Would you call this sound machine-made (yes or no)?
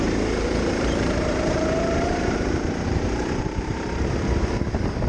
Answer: yes